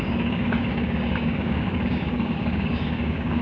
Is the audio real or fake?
fake